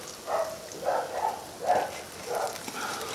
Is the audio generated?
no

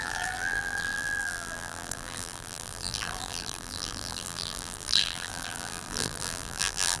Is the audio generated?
yes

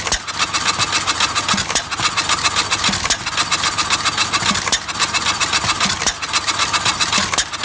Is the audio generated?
no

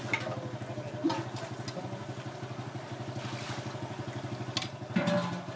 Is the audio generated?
no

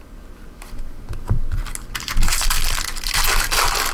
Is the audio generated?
no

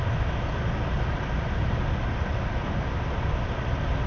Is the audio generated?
no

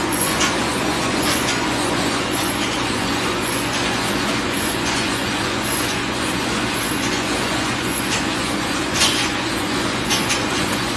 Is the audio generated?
yes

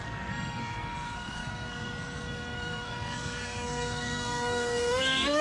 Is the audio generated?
yes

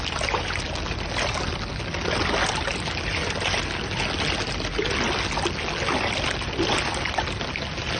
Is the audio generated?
no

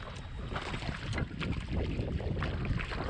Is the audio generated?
no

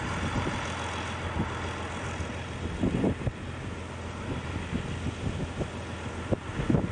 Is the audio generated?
no